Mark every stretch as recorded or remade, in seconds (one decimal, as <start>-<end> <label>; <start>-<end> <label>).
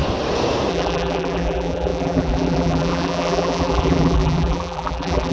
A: 0.0-0.7 recorded; 0.7-5.3 remade